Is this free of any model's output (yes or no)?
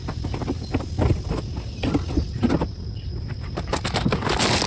yes